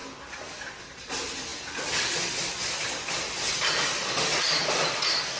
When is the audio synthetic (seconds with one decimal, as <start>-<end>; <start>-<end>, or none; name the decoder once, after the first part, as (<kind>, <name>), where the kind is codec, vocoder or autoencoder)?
none

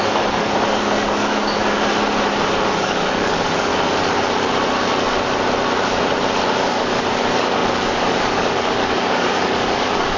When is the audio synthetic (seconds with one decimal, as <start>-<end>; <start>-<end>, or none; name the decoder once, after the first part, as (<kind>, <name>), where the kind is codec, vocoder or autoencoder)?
0.0-1.6 (codec, DAC); 2.8-3.7; 6.6-10.2

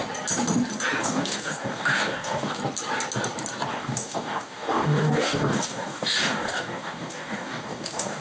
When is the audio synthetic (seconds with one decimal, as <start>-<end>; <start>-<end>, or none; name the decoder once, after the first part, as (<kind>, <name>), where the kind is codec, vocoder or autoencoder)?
1.0-2.6 (codec, DAC); 3.7-8.2

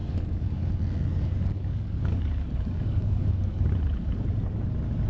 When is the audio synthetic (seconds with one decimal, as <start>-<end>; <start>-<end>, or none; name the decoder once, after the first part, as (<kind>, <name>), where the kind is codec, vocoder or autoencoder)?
0.0-0.7 (codec, DAC); 1.1-3.7

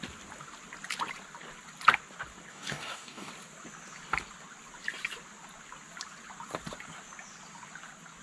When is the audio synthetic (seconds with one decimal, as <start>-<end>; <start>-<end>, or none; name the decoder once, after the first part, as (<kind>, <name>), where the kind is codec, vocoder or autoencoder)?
2.5-3.3 (codec, DAC)